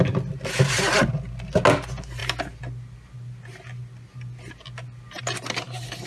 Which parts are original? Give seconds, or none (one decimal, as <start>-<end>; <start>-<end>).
0.0-6.1